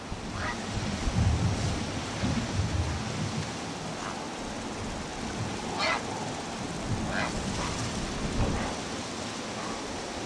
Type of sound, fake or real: real